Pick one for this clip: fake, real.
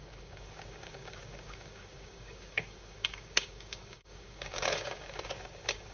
fake